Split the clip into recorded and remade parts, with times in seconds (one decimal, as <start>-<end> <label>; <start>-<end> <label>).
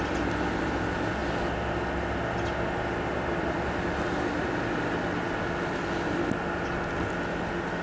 0.0-7.8 recorded